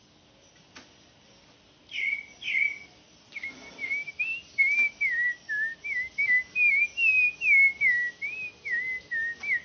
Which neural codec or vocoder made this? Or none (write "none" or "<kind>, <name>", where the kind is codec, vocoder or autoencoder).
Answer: none